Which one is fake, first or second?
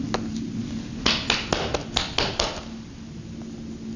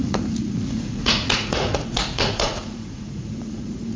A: second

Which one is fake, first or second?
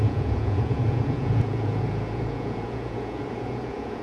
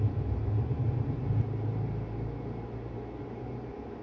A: first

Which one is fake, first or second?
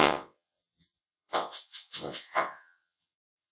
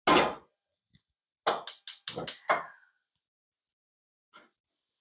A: first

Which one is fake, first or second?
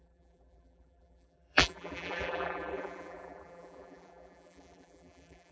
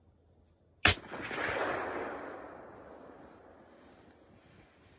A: first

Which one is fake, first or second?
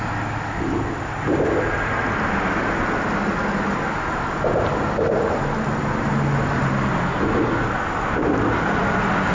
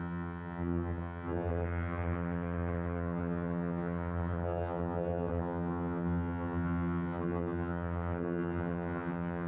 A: second